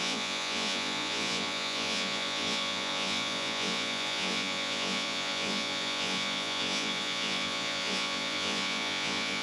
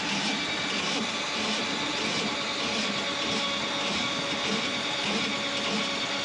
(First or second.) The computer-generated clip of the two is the first